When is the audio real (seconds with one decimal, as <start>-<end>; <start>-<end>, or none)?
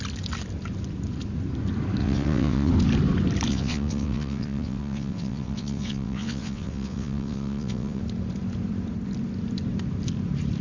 0.0-2.0; 2.7-3.5; 8.0-10.6